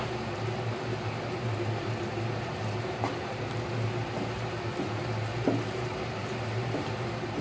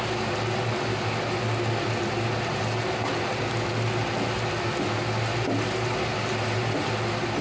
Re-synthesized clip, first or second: first